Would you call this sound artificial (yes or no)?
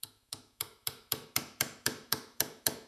yes